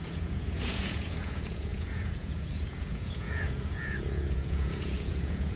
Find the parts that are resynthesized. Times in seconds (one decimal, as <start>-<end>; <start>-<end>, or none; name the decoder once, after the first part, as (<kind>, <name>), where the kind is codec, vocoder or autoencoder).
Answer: 0.0-5.6 (vocoder, Vocos)